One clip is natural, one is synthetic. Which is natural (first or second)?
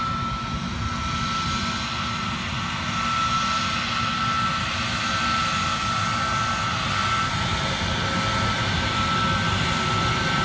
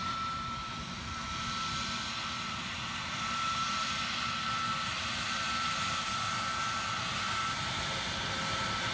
first